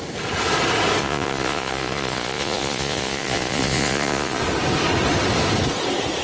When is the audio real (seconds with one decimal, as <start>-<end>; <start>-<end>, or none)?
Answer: 0.0-1.0; 4.4-6.2